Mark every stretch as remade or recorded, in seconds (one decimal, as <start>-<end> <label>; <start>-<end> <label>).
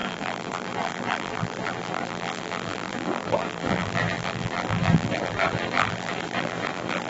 0.0-7.1 remade